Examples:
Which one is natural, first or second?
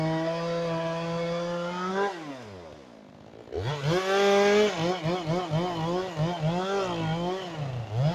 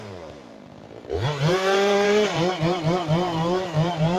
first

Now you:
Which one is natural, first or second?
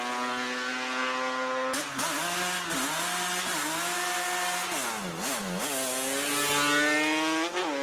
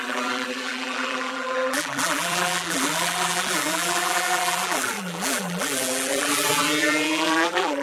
first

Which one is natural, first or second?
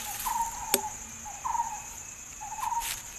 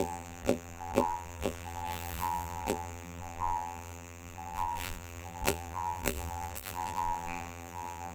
first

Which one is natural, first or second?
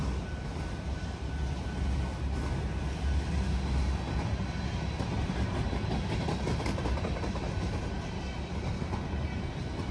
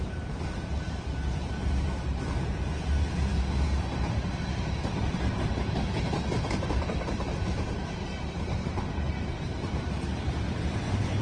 first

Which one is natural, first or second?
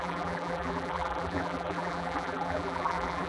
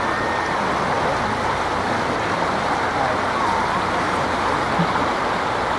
second